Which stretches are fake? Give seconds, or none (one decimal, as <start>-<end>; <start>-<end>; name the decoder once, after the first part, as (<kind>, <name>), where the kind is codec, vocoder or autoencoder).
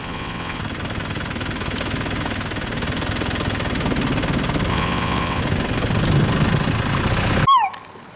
0.0-0.6 (vocoder, WaveNeXt); 4.7-5.4